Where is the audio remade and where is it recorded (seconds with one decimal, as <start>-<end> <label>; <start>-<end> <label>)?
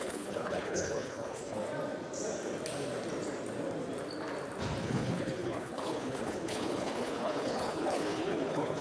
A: 0.0-1.6 remade; 1.6-4.8 recorded; 4.8-8.8 remade